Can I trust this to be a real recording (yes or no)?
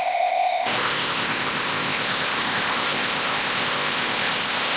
no